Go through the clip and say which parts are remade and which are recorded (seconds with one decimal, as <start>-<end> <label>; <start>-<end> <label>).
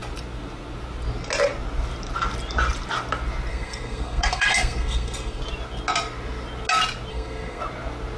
0.0-3.5 recorded; 3.5-5.4 remade; 5.4-7.1 recorded; 7.1-7.6 remade; 7.6-8.2 recorded